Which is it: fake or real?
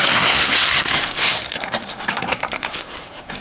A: fake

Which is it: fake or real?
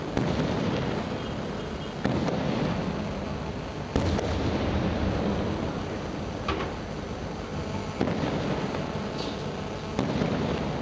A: real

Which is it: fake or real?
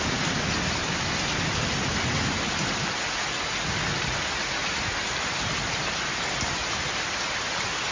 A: real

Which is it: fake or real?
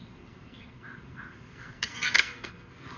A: fake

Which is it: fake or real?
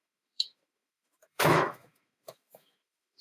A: fake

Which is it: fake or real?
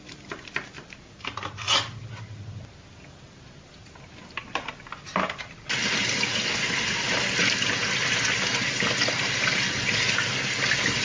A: real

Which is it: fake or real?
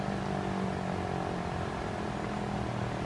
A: real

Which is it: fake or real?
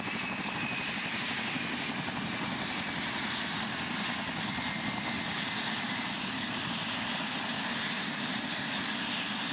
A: real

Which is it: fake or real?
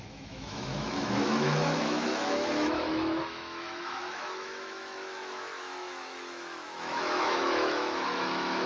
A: fake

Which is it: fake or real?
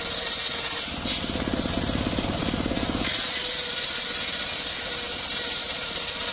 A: real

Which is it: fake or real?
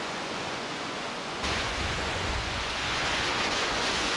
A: fake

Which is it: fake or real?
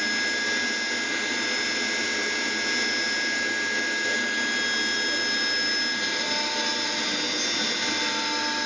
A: real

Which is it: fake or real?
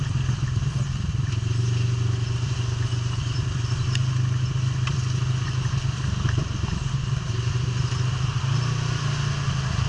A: real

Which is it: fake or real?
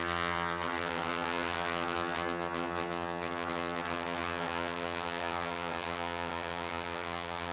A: fake